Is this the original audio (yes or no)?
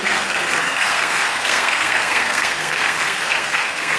no